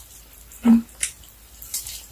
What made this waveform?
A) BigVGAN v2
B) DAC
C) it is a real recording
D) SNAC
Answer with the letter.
A